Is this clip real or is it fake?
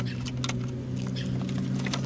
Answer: real